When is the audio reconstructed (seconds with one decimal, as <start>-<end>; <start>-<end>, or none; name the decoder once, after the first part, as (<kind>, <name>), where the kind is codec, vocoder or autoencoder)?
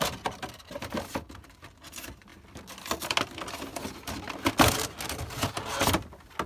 none